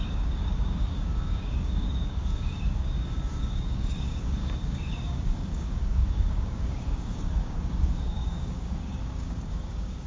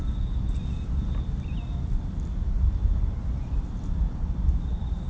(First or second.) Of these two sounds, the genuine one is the second